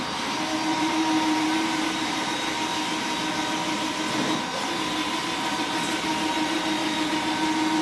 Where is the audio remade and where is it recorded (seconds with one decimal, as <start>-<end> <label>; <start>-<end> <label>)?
0.0-0.7 recorded; 0.7-2.5 remade; 2.5-7.8 recorded